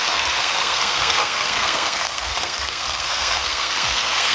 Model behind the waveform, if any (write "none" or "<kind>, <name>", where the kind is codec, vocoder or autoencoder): codec, SNAC